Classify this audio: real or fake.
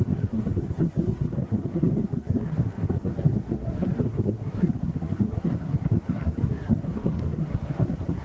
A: fake